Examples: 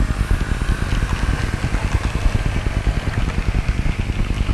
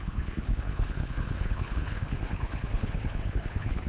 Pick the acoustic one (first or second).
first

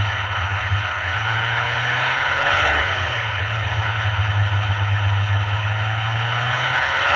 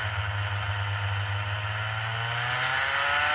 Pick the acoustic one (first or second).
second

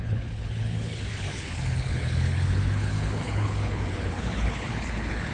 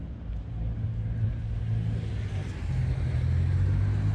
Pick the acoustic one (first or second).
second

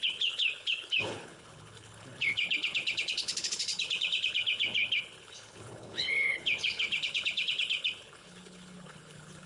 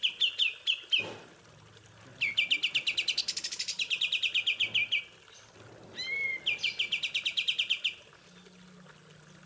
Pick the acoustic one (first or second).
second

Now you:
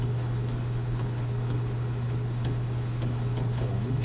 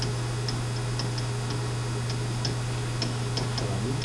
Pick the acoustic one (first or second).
second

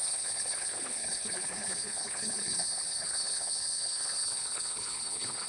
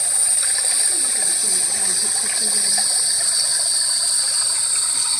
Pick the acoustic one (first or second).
second